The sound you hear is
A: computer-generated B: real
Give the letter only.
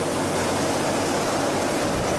B